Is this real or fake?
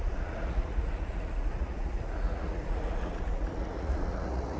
fake